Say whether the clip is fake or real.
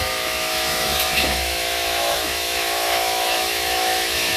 fake